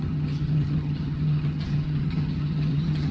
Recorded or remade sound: remade